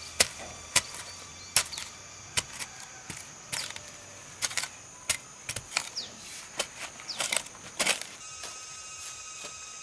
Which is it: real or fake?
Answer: real